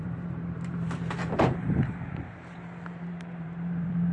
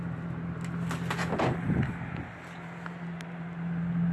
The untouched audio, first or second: second